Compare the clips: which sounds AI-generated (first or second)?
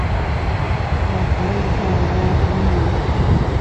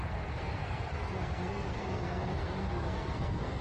second